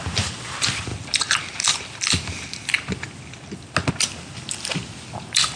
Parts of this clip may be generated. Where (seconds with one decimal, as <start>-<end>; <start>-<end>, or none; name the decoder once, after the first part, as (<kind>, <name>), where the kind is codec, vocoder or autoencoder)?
none